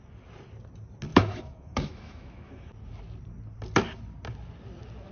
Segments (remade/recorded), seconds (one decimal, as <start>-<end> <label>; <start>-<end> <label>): 0.0-1.1 recorded; 1.1-2.7 remade; 2.7-5.1 recorded

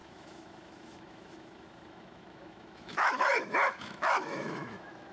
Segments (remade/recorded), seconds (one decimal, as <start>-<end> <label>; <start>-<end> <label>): 0.0-5.1 remade

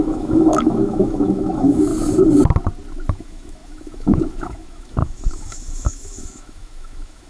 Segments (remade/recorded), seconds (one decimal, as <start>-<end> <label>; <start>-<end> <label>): 0.0-1.9 remade; 1.9-3.1 recorded; 3.1-7.3 remade

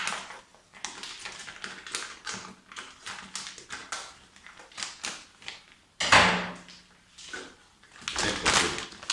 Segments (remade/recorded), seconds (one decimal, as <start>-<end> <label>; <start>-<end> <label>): 0.0-9.1 recorded

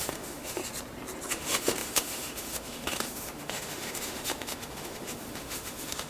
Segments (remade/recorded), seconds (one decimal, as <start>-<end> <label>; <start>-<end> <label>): 0.0-0.6 remade; 0.6-1.3 recorded; 1.3-6.1 remade

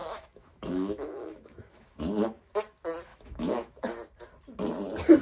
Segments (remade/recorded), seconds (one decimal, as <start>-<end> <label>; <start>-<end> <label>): 0.0-2.0 remade; 2.0-3.1 recorded; 3.1-3.9 remade; 3.9-5.2 recorded

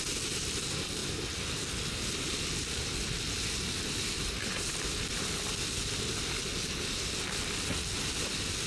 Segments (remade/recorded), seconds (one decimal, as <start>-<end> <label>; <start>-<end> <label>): 0.0-8.7 recorded